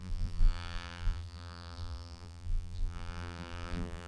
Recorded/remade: remade